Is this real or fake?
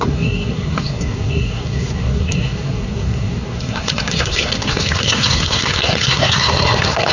fake